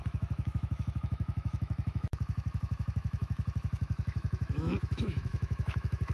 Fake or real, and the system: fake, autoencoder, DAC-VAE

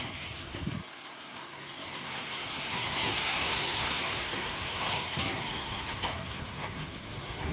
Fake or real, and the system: fake, codec, SNAC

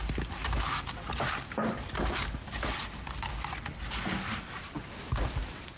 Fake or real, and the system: real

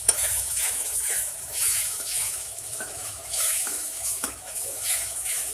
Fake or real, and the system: fake, autoencoder, DAC-VAE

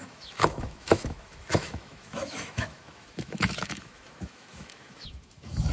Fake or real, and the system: fake, autoencoder, DAC-VAE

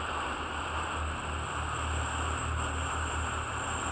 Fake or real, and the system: real